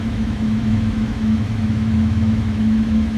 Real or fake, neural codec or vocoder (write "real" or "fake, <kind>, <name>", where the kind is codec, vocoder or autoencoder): fake, autoencoder, DAC-VAE